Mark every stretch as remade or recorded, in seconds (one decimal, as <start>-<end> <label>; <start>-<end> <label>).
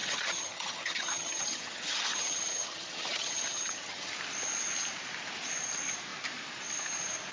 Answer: 0.0-4.1 remade; 4.1-7.3 recorded